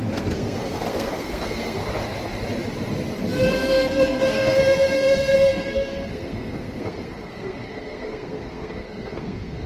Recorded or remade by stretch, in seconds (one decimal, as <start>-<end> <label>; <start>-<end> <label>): 0.0-1.8 remade; 1.8-3.5 recorded; 3.5-9.7 remade

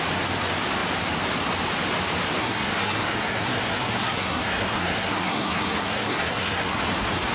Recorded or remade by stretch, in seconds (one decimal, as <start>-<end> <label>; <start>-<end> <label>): 0.0-2.4 recorded; 2.4-6.8 remade; 6.8-7.3 recorded

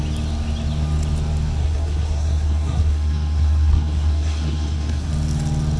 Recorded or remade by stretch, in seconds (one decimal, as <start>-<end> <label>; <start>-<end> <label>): 0.0-1.6 recorded; 1.6-5.1 remade; 5.1-5.8 recorded

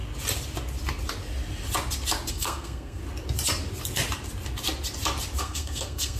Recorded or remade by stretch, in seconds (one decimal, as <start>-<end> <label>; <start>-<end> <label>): 0.0-2.3 recorded; 2.3-3.0 remade; 3.0-5.4 recorded; 5.4-6.2 remade